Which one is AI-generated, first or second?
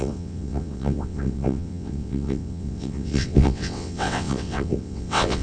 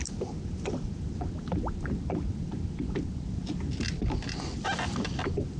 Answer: first